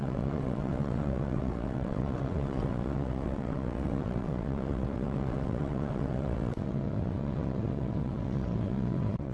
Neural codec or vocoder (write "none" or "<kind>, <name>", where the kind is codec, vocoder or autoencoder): vocoder, WaveNeXt